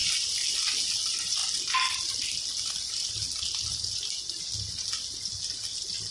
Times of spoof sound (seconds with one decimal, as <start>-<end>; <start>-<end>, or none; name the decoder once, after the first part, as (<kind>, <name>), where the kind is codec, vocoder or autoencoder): none

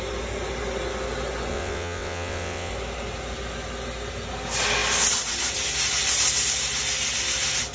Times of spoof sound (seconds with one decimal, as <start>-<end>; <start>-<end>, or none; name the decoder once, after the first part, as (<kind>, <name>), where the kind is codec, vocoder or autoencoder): 1.5-2.7 (vocoder, WaveNeXt)